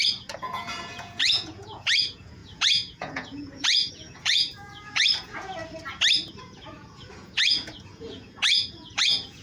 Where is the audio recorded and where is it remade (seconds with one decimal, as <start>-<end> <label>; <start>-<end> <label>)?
0.0-5.6 remade; 5.6-6.4 recorded; 6.4-9.4 remade

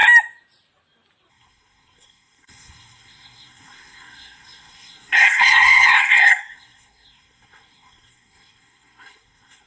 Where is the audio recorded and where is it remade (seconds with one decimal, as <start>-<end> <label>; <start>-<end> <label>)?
0.0-1.3 recorded; 1.3-9.7 remade

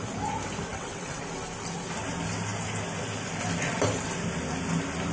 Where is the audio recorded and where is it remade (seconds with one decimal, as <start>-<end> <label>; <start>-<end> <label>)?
0.0-0.7 recorded; 0.7-1.2 remade; 1.2-5.1 recorded

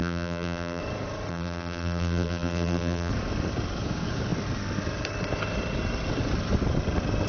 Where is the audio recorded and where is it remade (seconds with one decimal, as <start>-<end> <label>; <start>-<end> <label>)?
0.0-0.8 remade; 0.8-1.3 recorded; 1.3-3.1 remade; 3.1-7.3 recorded

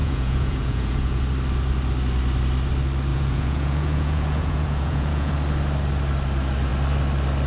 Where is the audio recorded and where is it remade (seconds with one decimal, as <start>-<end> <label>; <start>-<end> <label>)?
0.0-1.2 remade; 1.2-3.1 recorded; 3.1-5.3 remade; 5.3-7.5 recorded